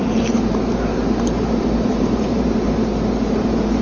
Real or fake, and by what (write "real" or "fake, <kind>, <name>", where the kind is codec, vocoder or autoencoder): fake, vocoder, BigVGAN v2